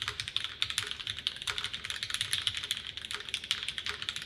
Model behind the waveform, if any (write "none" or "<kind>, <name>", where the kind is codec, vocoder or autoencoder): none